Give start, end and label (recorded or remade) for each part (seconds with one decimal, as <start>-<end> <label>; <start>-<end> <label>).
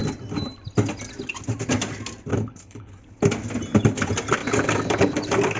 0.0-2.3 recorded; 2.3-3.0 remade; 3.0-5.6 recorded